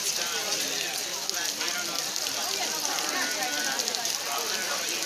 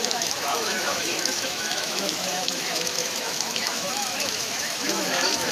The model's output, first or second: second